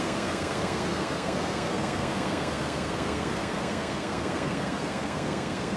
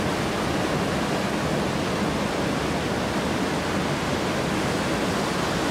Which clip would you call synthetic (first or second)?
first